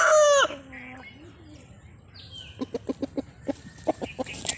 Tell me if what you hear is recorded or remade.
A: recorded